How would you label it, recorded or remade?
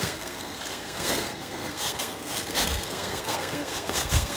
remade